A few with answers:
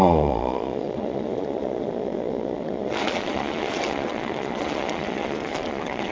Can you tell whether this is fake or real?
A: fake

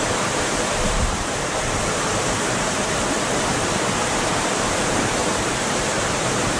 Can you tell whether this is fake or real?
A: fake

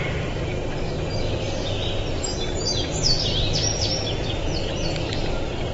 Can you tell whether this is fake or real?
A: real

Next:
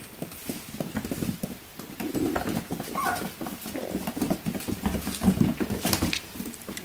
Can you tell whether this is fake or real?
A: real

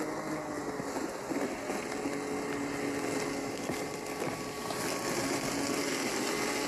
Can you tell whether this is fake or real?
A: real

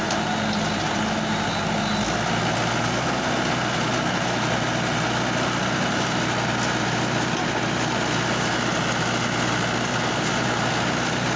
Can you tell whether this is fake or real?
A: real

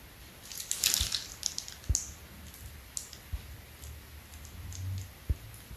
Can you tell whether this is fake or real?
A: real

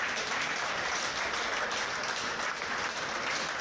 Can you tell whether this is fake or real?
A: real